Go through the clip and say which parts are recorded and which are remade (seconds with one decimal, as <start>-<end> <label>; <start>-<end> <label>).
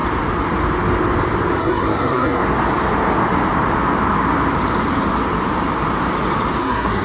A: 0.0-1.6 recorded; 1.6-2.4 remade; 2.4-6.6 recorded; 6.6-7.0 remade